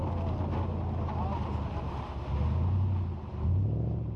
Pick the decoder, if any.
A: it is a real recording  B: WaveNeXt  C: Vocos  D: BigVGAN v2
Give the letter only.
A